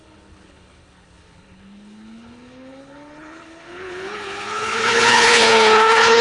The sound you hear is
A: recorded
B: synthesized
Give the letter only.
B